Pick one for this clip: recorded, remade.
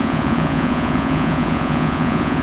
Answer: remade